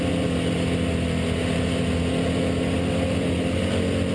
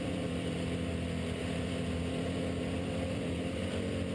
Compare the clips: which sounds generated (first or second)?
second